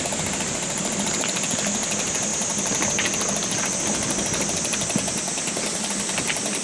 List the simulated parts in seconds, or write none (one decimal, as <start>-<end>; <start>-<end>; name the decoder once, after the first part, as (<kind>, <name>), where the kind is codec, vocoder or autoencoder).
none